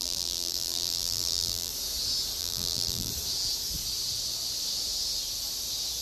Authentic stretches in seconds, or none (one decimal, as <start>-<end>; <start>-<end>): 1.7-2.4; 3.1-6.0